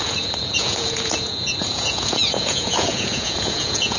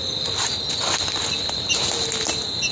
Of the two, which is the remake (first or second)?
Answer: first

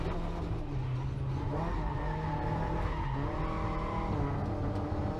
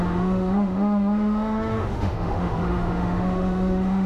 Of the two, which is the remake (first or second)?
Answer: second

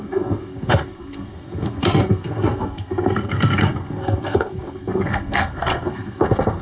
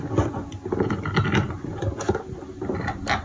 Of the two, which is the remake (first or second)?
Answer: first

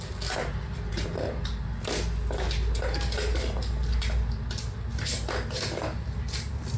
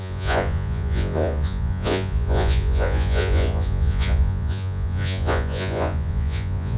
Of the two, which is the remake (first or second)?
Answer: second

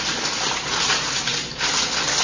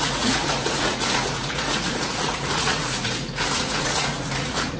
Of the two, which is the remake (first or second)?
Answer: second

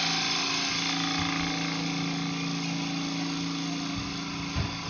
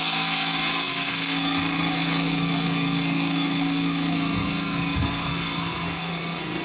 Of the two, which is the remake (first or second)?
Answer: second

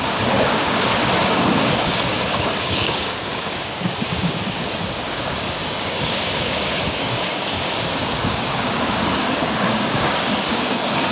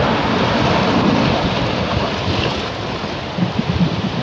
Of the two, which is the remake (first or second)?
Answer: first